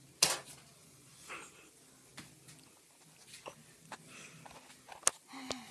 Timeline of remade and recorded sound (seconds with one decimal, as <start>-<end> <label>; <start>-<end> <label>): 0.0-0.8 recorded; 0.8-1.3 remade; 1.3-5.7 recorded